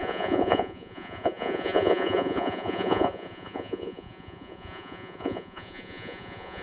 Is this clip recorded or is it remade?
remade